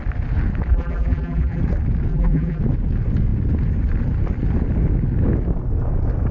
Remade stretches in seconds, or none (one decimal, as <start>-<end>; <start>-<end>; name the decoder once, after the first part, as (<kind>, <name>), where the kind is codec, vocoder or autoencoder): 0.7-1.6 (vocoder, BigVGAN v2); 2.1-2.6